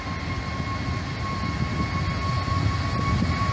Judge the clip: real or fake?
real